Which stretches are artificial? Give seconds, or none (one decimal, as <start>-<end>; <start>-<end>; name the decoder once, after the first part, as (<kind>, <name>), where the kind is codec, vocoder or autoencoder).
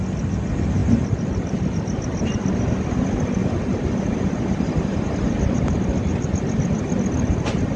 4.9-7.8 (vocoder, BigVGAN v2)